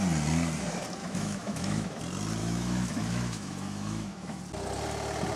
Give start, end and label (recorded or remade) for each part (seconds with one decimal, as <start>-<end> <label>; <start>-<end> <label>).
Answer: 0.0-1.0 recorded; 1.0-2.0 remade; 2.0-2.4 recorded; 2.4-4.4 remade; 4.4-5.4 recorded